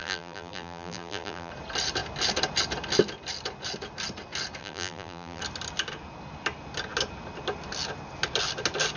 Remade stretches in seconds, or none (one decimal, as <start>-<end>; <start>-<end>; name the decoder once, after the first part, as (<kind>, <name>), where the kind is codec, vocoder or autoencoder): 0.0-1.5 (vocoder, BigVGAN v2); 4.6-5.4